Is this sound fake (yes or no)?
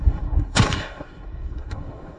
yes